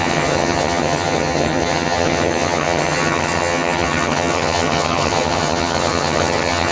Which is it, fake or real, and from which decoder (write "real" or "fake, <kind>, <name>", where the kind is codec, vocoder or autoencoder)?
fake, vocoder, HiFi-GAN